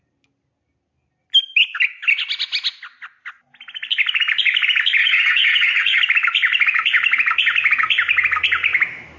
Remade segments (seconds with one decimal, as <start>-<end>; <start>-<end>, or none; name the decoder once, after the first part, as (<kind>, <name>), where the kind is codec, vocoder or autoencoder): 5.0-6.0 (vocoder, HiFi-GAN)